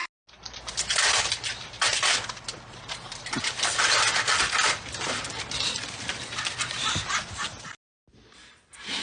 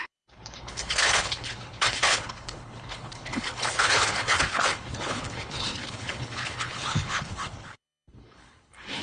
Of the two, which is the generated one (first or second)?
second